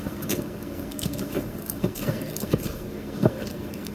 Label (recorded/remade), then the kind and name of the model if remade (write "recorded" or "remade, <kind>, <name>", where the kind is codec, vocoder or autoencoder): remade, codec, SNAC